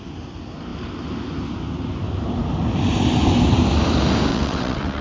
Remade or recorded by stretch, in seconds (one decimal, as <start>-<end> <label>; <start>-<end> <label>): 0.0-4.3 recorded; 4.3-5.0 remade